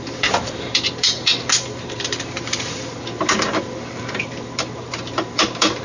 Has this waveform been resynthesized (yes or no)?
yes